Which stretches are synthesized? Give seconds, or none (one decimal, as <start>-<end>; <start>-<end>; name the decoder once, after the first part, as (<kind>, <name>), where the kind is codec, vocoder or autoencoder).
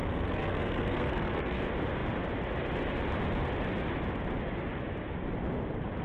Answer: 0.0-1.6 (codec, SNAC)